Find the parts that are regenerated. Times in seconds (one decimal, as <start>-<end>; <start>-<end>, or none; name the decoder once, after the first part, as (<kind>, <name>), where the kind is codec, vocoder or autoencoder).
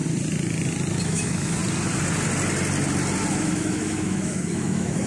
1.0-1.6 (autoencoder, DAC-VAE); 3.3-5.1